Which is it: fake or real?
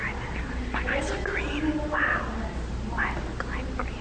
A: real